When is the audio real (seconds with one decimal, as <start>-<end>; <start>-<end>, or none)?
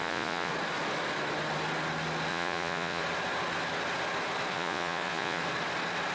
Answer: 0.5-2.3; 3.0-4.5; 5.4-6.1